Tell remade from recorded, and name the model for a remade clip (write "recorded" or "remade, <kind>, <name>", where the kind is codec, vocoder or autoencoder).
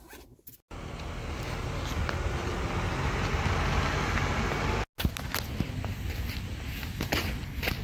recorded